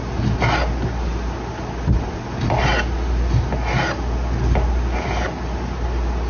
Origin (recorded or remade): recorded